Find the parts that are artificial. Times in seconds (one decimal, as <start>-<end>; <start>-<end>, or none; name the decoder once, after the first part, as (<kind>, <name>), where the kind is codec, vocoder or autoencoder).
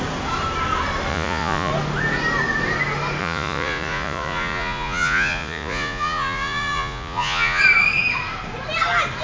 1.1-1.7 (vocoder, Vocos); 3.2-7.6